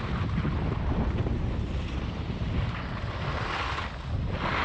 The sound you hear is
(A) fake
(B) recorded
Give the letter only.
B